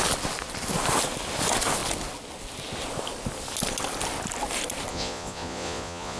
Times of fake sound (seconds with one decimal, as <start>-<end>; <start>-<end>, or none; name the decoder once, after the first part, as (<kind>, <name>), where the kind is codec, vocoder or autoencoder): 4.9-6.2 (vocoder, Vocos)